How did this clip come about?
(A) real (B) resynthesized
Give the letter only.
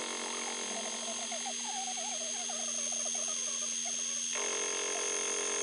A